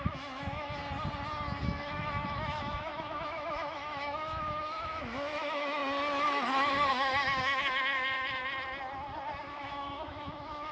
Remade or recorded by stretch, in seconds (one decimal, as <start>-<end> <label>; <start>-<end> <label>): 0.0-0.8 remade; 0.8-1.6 recorded; 1.6-5.8 remade; 5.8-6.9 recorded; 6.9-8.4 remade; 8.4-9.4 recorded; 9.4-10.7 remade

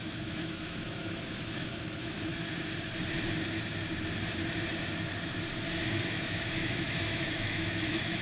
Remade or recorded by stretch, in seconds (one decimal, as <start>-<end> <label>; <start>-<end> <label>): 0.0-2.3 remade; 2.3-6.1 recorded; 6.1-8.2 remade

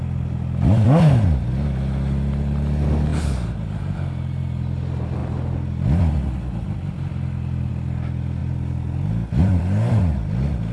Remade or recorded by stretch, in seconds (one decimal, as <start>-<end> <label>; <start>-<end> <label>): 0.0-10.7 recorded

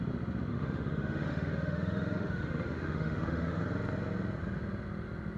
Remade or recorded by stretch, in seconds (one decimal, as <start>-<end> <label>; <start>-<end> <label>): 0.0-0.5 recorded; 0.5-3.6 remade; 3.6-5.4 recorded

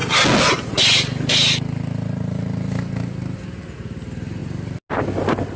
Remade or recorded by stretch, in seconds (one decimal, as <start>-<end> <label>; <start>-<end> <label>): 0.0-5.6 recorded